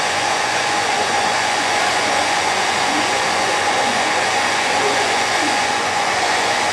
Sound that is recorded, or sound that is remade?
remade